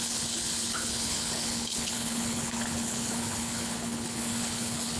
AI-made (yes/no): yes